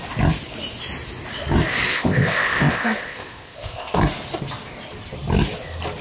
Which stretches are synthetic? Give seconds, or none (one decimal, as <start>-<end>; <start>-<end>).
1.9-4.0